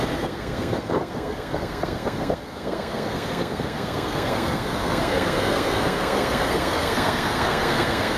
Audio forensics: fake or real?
fake